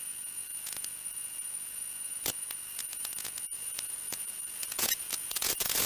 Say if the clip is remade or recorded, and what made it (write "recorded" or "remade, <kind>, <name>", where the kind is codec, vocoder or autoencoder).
remade, vocoder, Vocos